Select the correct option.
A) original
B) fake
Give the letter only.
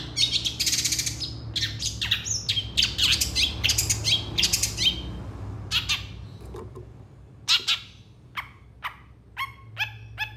A